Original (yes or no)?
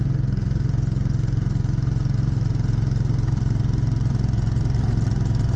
yes